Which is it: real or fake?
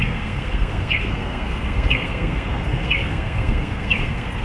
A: fake